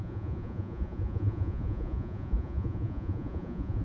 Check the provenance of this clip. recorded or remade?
remade